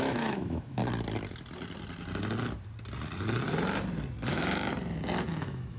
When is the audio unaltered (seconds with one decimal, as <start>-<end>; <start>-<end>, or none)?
0.8-4.3; 4.7-5.3